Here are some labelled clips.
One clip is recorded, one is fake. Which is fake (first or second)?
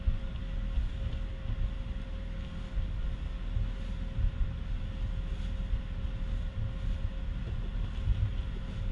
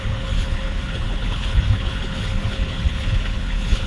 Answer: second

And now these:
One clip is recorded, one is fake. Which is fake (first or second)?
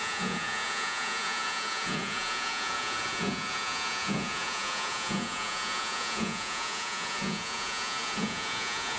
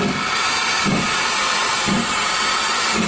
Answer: first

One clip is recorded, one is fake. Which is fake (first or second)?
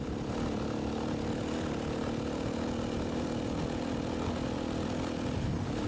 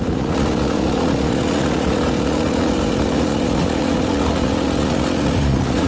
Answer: second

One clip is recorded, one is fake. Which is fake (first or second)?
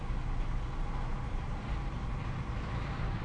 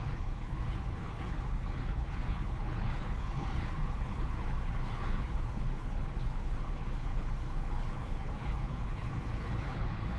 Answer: second